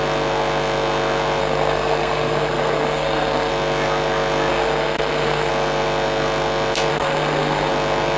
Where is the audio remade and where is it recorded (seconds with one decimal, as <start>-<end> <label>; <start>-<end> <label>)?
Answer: 0.0-1.4 recorded; 1.4-3.5 remade; 3.5-4.5 recorded; 4.5-5.5 remade; 5.5-6.9 recorded; 6.9-7.7 remade; 7.7-8.2 recorded